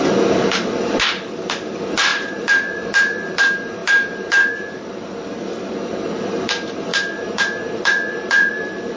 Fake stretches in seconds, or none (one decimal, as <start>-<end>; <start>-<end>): 0.0-9.0